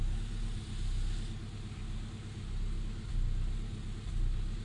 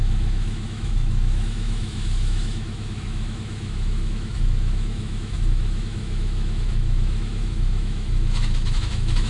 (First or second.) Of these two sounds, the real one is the first